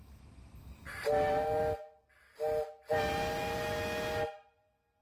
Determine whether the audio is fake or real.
real